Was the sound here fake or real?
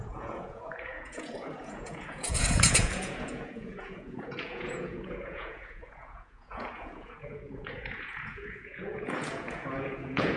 fake